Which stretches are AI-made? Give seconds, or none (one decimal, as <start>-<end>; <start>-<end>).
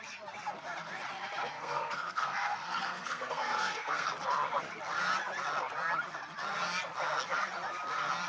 1.4-4.1